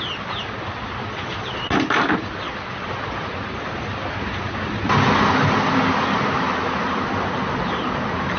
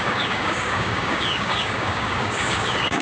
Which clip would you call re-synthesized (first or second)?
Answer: second